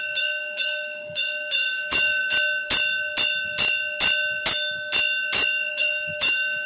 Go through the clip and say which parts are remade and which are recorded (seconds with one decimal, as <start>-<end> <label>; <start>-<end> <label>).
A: 0.0-2.2 remade; 2.2-5.7 recorded; 5.7-6.7 remade